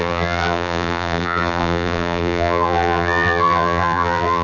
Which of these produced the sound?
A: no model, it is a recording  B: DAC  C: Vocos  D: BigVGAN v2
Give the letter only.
D